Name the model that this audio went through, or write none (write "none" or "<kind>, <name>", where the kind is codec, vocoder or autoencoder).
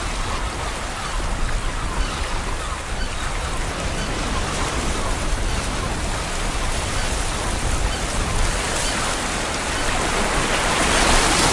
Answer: none